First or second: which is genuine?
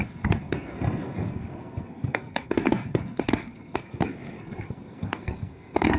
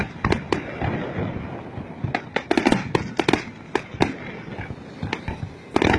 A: second